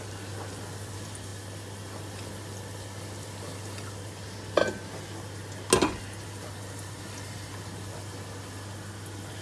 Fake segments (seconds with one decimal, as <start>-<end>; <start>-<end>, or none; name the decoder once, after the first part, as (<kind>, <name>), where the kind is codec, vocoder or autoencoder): none

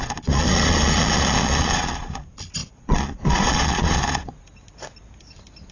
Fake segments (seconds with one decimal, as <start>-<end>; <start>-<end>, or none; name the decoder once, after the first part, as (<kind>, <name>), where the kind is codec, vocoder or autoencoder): 0.0-2.2 (vocoder, Vocos); 2.6-4.3

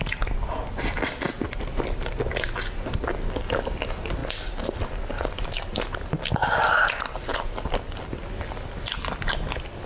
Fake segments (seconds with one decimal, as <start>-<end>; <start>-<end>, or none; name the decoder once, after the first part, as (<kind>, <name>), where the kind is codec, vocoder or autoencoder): none